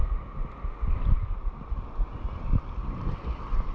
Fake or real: real